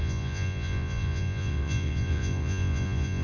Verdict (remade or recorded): remade